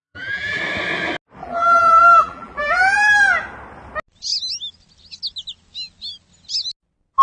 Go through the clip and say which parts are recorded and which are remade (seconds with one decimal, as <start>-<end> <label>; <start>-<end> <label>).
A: 0.0-0.6 remade; 0.6-1.4 recorded; 1.4-3.2 remade; 3.2-7.2 recorded